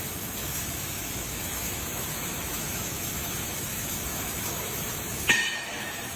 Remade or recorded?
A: remade